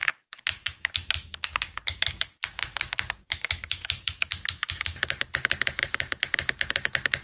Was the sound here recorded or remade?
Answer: remade